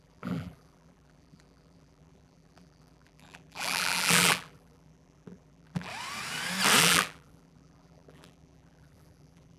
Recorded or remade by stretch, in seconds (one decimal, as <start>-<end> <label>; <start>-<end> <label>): 0.0-5.9 remade; 5.9-6.8 recorded; 6.8-9.6 remade